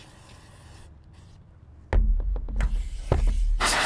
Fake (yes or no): no